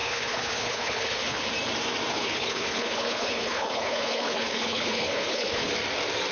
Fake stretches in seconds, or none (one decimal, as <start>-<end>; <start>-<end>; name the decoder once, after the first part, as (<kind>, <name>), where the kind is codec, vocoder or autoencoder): 0.0-1.5 (codec, HILCodec); 2.1-5.7